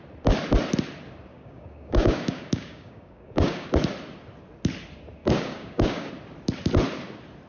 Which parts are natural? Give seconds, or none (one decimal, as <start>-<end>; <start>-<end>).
0.0-1.3; 3.7-5.2; 6.1-7.5